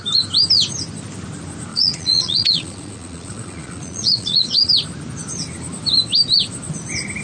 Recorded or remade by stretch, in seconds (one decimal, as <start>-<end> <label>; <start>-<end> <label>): 0.0-1.7 recorded; 1.7-4.7 remade; 4.7-7.2 recorded